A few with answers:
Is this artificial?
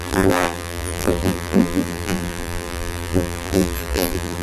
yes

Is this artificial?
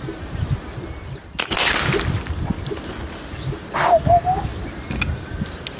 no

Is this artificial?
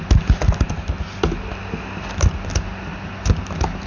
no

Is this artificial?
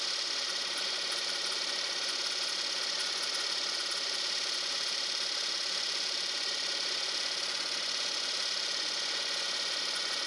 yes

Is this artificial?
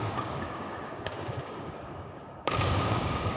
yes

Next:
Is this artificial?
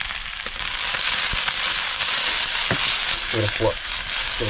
no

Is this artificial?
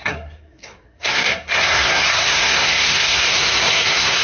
yes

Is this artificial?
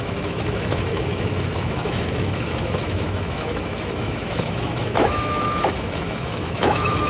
yes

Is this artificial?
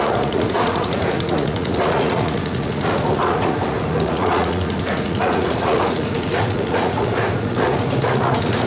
yes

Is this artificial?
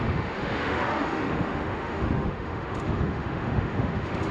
yes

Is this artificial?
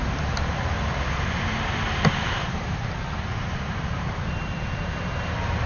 yes